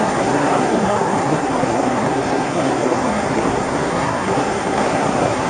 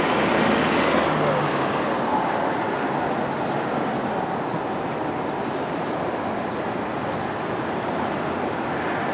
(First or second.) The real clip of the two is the second